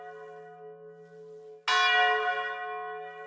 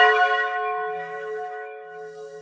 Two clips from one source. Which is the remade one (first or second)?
second